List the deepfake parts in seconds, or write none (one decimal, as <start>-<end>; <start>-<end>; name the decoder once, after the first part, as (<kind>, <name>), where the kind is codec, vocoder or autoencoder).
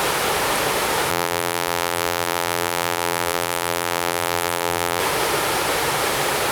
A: 1.1-5.0 (vocoder, BigVGAN v2)